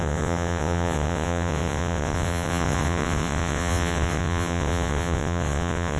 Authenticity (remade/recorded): remade